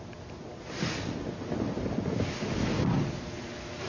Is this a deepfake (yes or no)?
no